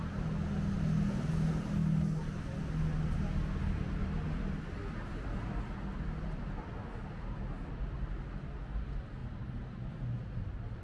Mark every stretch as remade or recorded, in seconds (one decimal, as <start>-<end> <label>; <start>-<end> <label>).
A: 0.0-9.2 recorded; 9.2-9.9 remade; 9.9-10.8 recorded